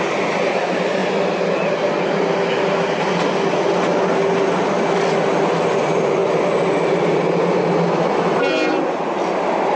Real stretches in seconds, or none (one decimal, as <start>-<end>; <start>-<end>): 0.0-9.8